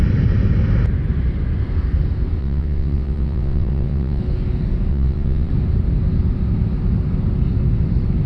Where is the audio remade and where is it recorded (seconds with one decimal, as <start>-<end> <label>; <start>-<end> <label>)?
0.0-2.4 recorded; 2.4-4.2 remade; 4.2-4.9 recorded; 4.9-5.5 remade; 5.5-8.3 recorded